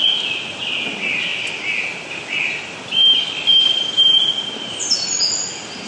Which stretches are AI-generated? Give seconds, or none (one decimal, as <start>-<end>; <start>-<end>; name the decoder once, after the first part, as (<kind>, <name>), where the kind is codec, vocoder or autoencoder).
none